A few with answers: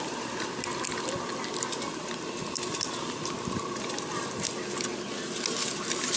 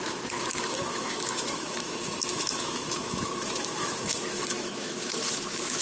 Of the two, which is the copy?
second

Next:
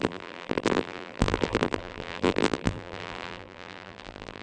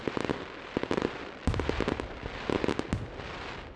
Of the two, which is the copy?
first